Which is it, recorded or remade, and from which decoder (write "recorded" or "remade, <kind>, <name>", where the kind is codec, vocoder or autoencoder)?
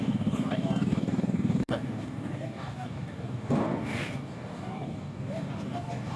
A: remade, codec, DAC